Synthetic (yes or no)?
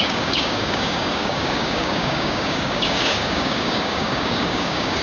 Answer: yes